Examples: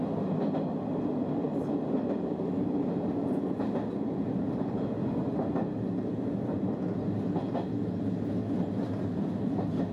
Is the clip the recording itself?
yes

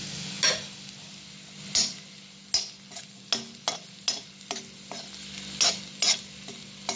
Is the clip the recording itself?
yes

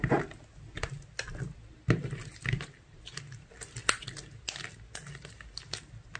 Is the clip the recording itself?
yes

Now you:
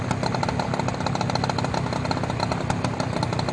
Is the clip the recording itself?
yes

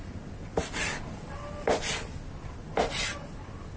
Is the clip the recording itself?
yes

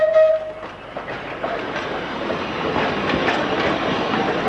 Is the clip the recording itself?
yes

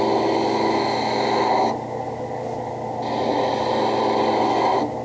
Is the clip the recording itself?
yes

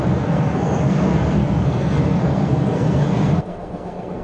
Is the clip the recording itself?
no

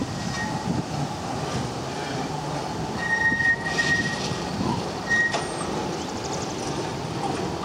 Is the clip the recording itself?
yes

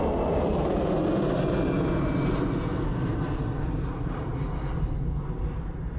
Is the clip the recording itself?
yes